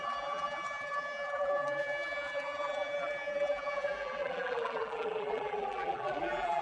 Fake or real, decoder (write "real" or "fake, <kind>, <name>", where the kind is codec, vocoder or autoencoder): fake, vocoder, BigVGAN v2